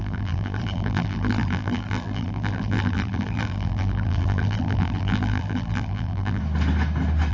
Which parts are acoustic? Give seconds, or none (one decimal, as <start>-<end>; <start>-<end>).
6.4-7.3